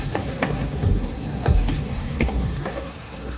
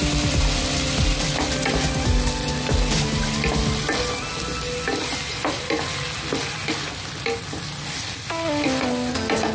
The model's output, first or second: first